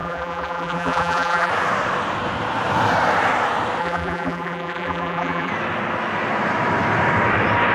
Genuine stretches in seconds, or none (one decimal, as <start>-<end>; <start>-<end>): 1.5-3.8; 5.5-7.7